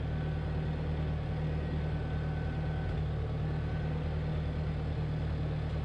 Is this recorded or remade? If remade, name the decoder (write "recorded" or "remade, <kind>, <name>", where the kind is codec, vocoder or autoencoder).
recorded